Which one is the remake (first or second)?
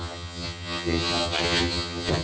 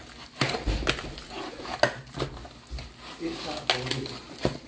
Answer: first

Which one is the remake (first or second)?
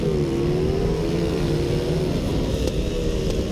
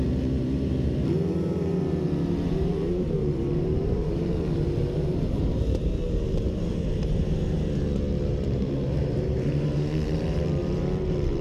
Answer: second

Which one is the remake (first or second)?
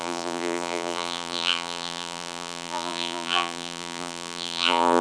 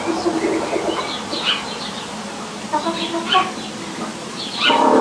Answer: first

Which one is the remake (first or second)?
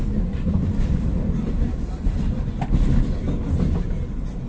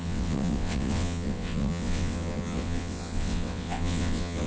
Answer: second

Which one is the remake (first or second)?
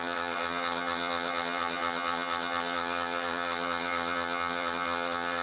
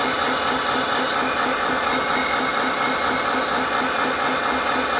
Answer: first